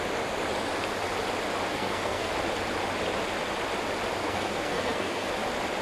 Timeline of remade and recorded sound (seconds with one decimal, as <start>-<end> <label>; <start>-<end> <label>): 0.0-1.7 recorded; 1.7-2.3 remade; 2.3-4.2 recorded; 4.2-5.3 remade; 5.3-5.8 recorded